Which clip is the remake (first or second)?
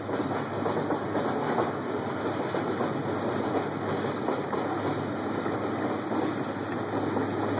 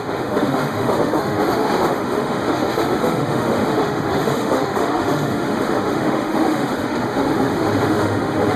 second